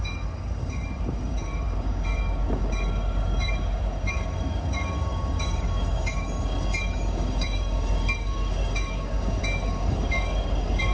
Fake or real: fake